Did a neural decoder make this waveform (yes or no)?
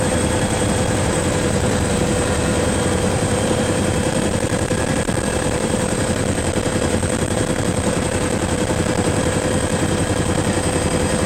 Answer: yes